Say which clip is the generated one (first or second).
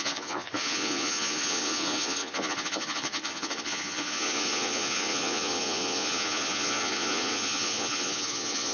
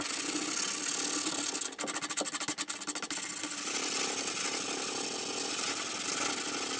first